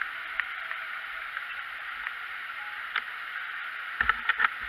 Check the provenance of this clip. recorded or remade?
recorded